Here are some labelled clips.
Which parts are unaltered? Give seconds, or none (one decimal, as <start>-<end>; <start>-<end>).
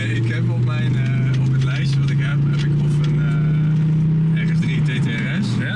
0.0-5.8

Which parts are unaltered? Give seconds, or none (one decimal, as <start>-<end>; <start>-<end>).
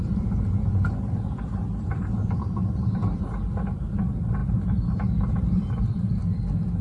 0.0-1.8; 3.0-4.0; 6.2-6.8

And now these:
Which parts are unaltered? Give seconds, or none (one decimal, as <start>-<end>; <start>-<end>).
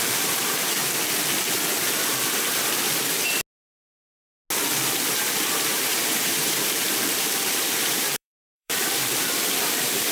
0.8-5.7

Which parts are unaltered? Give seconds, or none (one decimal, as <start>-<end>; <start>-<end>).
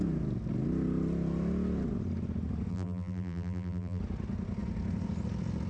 0.0-2.7; 4.0-5.7